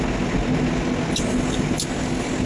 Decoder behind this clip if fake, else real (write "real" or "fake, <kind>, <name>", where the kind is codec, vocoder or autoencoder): real